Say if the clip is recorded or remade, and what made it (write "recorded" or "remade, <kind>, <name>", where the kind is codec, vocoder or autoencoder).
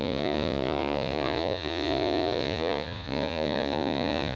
remade, vocoder, Vocos